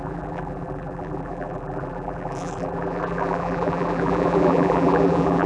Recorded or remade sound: remade